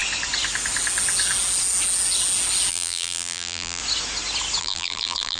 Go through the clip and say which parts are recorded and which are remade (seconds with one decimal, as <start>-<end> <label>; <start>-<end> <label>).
0.0-2.7 recorded; 2.7-3.8 remade; 3.8-4.6 recorded; 4.6-5.4 remade